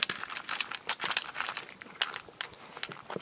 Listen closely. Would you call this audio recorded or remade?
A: recorded